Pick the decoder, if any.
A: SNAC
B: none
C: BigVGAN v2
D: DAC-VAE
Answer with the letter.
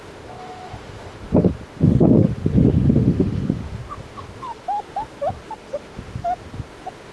D